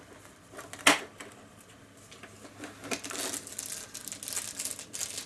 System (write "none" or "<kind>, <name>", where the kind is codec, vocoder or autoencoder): none